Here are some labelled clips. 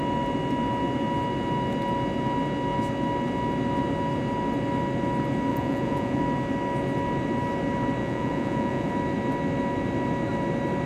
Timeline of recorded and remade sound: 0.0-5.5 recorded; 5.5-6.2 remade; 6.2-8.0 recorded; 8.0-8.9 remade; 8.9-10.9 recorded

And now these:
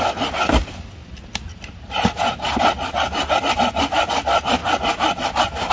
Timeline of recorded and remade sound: 0.0-1.0 recorded; 1.0-3.3 remade; 3.3-5.7 recorded

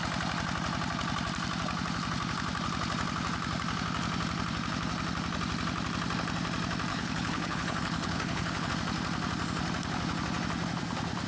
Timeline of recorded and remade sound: 0.0-6.9 recorded; 6.9-8.7 remade; 8.7-11.3 recorded

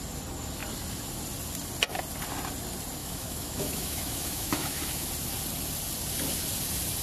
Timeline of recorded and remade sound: 0.0-3.0 recorded; 3.0-5.1 remade; 5.1-7.0 recorded

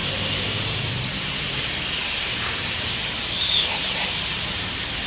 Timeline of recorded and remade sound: 0.0-0.9 remade; 0.9-2.0 recorded; 2.0-5.1 remade